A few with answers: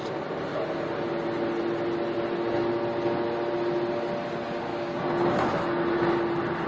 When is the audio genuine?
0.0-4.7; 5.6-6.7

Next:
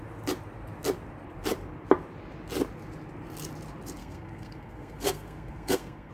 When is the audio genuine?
0.0-4.0